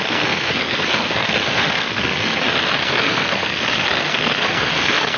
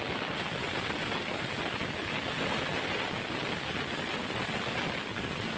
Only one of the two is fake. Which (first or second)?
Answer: first